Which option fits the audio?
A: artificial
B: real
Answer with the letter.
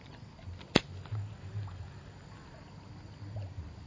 B